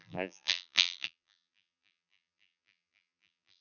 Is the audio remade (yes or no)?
yes